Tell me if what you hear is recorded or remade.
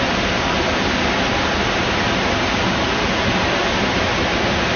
recorded